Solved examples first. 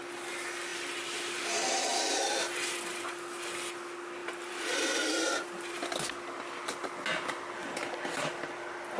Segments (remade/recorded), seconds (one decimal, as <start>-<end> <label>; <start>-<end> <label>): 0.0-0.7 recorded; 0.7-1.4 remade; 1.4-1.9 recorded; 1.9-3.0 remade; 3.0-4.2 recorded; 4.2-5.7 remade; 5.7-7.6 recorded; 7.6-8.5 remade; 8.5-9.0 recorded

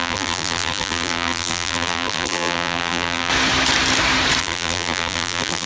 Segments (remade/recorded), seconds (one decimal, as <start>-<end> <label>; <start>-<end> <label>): 0.0-3.3 remade; 3.3-4.4 recorded; 4.4-5.7 remade

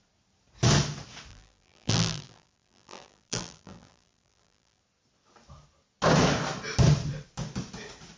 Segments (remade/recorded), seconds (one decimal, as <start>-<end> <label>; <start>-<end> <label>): 0.0-1.3 recorded; 1.3-4.8 remade; 4.8-8.2 recorded

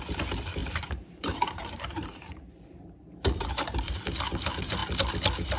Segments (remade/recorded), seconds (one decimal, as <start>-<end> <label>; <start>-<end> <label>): 0.0-0.6 recorded; 0.6-4.0 remade; 4.0-5.6 recorded